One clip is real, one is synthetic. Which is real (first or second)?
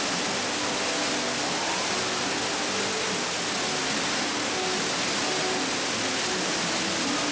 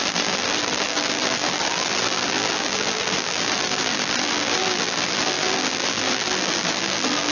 first